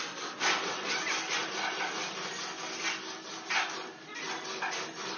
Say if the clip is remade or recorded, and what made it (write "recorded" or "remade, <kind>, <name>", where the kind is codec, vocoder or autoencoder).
recorded